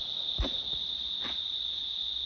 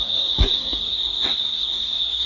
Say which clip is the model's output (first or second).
second